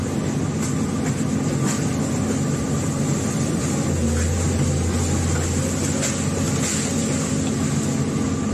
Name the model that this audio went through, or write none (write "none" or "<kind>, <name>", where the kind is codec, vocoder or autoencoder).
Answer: none